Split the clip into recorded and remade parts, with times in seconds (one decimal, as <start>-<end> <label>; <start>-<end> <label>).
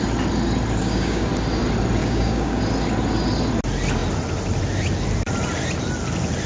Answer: 0.0-0.8 recorded; 0.8-1.3 remade; 1.3-2.0 recorded; 2.0-2.6 remade; 2.6-6.5 recorded